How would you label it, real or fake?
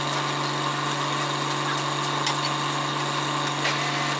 real